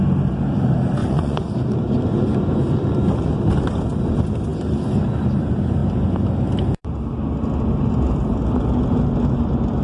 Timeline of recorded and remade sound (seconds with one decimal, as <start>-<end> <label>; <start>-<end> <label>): 0.0-1.0 recorded; 1.0-1.5 remade; 1.5-9.8 recorded